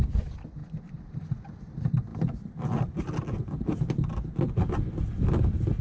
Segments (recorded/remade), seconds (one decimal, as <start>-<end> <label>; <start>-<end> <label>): 0.0-5.8 recorded